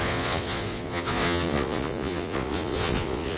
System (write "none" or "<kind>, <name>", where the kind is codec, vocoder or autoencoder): vocoder, Vocos